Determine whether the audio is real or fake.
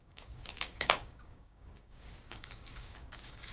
fake